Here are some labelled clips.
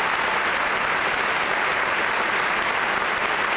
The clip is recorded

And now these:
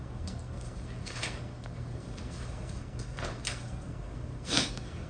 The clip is remade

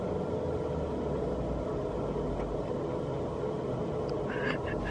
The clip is recorded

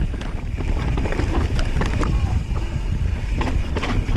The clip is remade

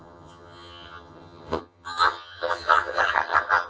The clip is remade